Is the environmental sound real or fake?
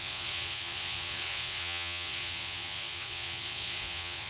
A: fake